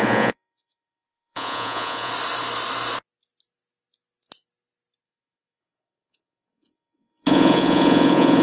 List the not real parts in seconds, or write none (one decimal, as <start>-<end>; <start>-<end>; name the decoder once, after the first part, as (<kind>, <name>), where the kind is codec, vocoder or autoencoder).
0.0-2.1 (vocoder, Vocos); 5.0-8.4